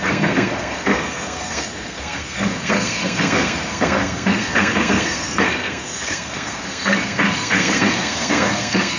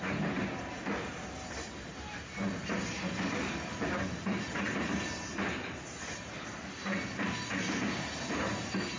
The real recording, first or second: second